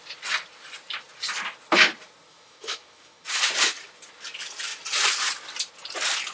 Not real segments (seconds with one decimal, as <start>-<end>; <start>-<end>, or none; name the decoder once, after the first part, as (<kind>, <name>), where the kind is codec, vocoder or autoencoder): 2.3-3.3 (autoencoder, DAC-VAE)